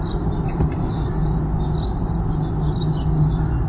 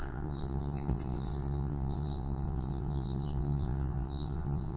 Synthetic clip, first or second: second